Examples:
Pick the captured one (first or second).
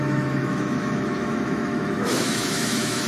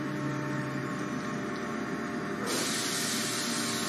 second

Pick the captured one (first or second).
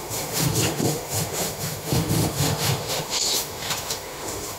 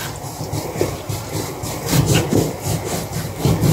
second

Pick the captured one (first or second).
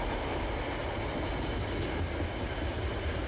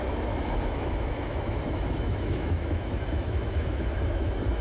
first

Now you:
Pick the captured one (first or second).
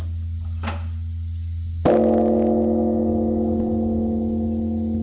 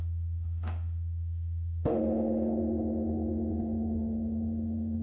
first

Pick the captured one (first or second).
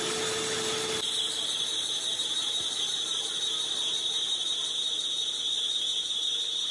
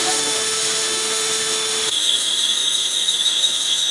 first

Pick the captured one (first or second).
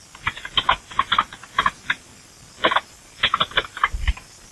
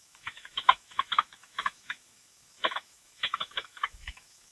first